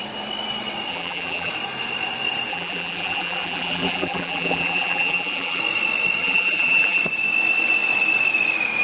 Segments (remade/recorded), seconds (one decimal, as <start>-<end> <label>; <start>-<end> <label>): 0.0-0.9 recorded; 0.9-1.5 remade; 1.5-2.5 recorded; 2.5-5.6 remade; 5.6-6.2 recorded; 6.2-7.0 remade; 7.0-8.8 recorded